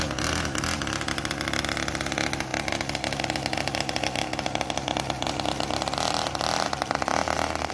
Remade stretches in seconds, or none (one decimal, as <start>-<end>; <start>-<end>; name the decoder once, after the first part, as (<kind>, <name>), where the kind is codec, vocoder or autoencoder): none